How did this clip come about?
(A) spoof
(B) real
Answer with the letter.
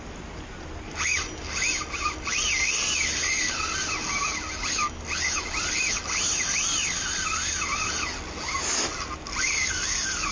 B